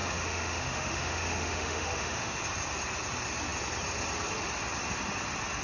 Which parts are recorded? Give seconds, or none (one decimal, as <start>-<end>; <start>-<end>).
2.4-5.6